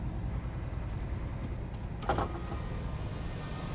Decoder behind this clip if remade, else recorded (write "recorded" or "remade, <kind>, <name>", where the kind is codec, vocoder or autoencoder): recorded